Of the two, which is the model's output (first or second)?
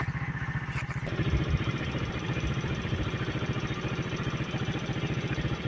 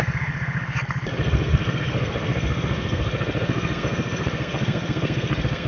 second